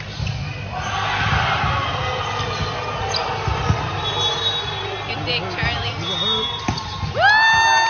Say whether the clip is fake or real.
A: real